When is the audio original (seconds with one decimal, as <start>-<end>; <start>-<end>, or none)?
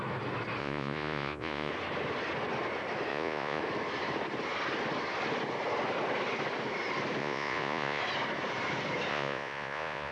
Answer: 0.0-0.6; 1.7-3.1; 3.6-7.2; 8.0-9.1